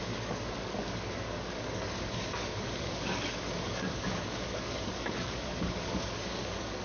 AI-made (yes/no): yes